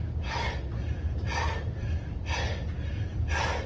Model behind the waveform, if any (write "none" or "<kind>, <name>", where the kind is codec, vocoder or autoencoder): none